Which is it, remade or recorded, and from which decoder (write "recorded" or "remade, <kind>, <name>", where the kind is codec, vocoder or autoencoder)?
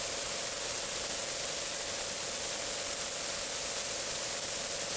recorded